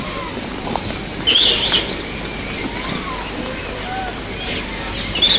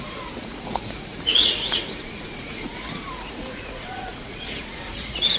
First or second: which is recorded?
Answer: first